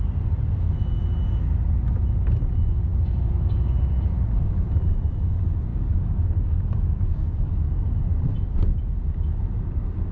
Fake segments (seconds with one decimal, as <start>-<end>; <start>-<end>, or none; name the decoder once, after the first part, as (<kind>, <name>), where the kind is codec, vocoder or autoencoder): 5.7-7.6 (codec, DAC)